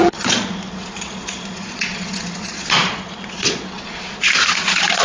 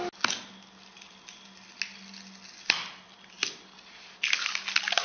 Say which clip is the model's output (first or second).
first